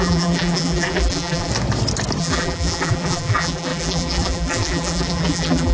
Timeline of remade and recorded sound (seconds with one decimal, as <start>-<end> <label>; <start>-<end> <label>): 0.0-1.5 remade; 1.5-2.2 recorded; 2.2-5.7 remade